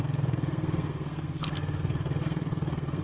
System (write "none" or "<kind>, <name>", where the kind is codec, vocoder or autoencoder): codec, SNAC